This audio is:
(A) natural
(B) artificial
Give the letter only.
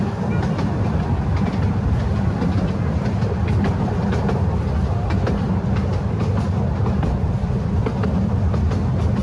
A